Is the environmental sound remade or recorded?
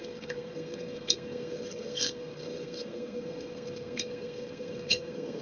remade